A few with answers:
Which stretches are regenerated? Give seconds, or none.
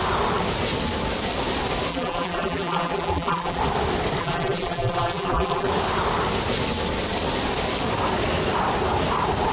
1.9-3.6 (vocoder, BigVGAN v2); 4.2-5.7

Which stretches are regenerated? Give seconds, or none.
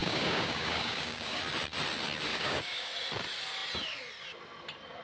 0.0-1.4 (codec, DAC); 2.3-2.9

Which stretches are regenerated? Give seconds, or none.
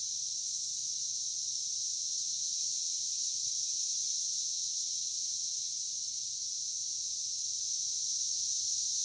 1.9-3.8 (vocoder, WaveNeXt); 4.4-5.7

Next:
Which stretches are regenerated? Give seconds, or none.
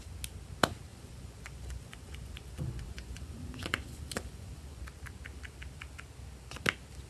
0.9-4.8 (vocoder, Vocos)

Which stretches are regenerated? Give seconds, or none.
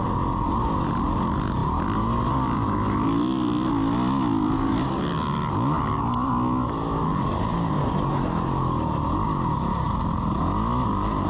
1.6-4.9 (vocoder, BigVGAN v2)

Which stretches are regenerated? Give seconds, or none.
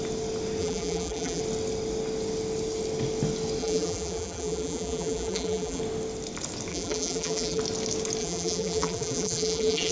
0.6-1.4 (vocoder, BigVGAN v2); 3.6-5.8; 6.7-7.6; 8.2-9.9